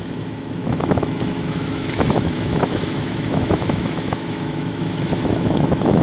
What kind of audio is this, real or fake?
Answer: fake